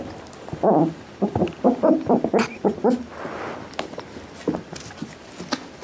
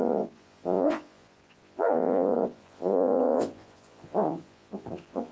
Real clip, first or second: first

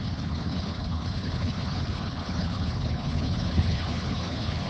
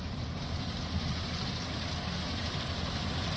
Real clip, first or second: second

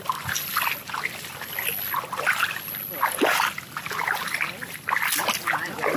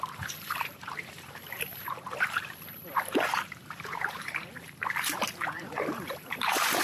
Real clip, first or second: first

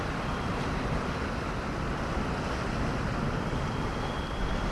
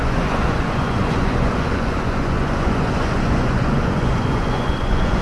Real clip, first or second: first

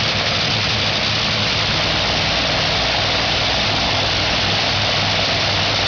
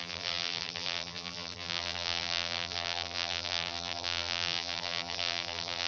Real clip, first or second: first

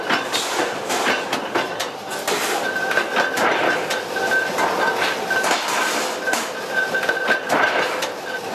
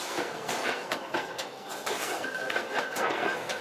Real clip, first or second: first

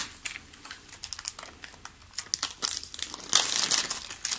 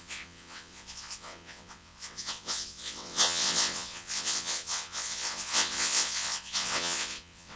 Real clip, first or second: first